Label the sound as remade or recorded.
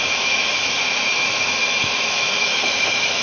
remade